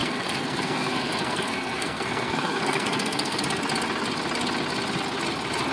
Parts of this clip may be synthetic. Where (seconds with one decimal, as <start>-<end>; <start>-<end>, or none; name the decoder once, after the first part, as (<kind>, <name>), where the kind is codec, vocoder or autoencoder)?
0.0-3.4 (codec, SNAC)